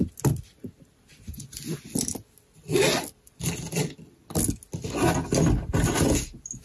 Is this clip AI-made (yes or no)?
no